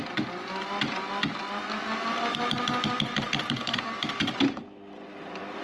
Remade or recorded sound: recorded